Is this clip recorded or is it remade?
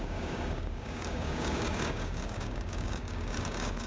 remade